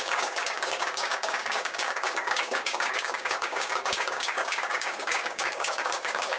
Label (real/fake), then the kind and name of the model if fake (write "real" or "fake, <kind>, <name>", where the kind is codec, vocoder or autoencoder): fake, codec, DAC